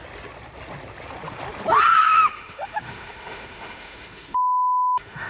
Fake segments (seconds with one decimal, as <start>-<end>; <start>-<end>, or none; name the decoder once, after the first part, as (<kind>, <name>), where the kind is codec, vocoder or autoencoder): 1.9-5.3 (autoencoder, DAC-VAE)